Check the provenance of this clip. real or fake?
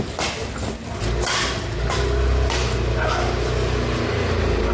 real